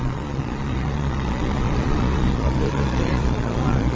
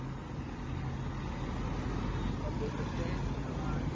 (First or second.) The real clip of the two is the second